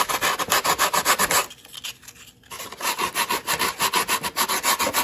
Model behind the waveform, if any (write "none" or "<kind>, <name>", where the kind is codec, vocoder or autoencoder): none